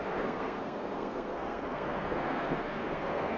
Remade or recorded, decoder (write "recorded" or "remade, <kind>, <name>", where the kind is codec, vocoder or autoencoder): remade, codec, SNAC